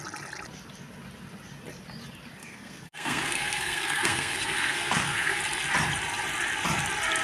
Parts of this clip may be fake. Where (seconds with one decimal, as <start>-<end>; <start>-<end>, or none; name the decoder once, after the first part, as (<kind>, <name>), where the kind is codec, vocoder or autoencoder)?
2.4-5.4 (codec, SNAC)